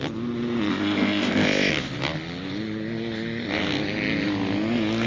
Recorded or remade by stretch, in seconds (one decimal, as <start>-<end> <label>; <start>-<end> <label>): 0.0-0.7 recorded; 0.7-1.7 remade; 1.7-5.1 recorded